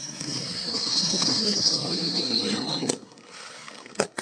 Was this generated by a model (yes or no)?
yes